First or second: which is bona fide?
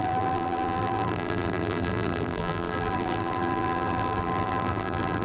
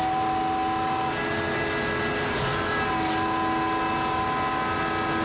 second